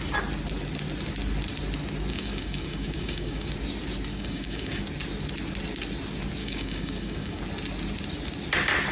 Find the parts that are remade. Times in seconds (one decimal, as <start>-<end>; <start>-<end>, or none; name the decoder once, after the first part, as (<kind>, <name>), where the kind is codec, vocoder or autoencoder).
2.1-3.5 (codec, DAC); 4.1-4.8; 6.4-7.4